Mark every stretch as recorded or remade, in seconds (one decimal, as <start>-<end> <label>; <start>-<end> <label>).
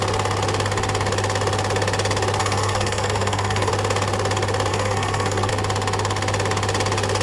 0.0-2.4 recorded; 2.4-3.7 remade; 3.7-4.7 recorded; 4.7-5.5 remade; 5.5-7.2 recorded